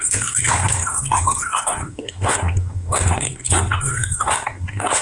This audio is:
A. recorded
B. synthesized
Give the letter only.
B